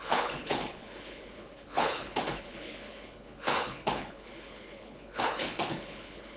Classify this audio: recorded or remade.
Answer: remade